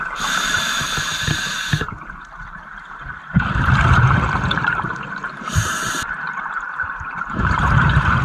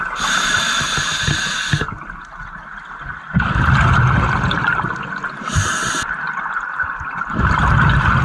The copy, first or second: first